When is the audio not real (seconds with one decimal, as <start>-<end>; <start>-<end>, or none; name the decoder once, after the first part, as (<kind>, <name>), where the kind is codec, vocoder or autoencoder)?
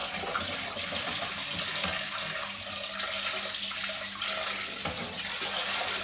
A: none